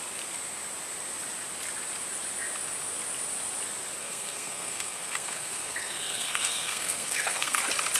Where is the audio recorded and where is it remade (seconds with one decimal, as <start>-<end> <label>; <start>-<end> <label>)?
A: 0.0-4.0 recorded; 4.0-7.6 remade; 7.6-8.0 recorded